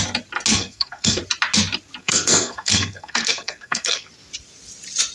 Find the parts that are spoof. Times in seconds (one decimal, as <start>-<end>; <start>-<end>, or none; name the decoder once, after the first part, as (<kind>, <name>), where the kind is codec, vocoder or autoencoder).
0.5-1.2 (codec, SNAC); 2.0-4.1